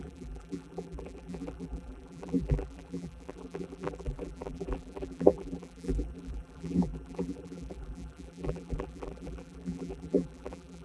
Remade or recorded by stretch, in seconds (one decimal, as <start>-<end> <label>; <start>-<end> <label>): 0.0-10.8 remade